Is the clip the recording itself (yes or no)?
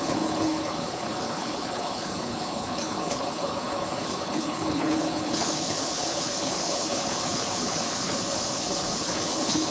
no